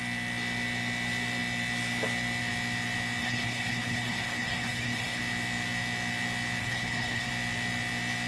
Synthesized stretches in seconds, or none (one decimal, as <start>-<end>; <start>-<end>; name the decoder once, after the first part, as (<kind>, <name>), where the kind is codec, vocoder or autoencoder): 3.2-5.2 (codec, HILCodec); 6.6-7.3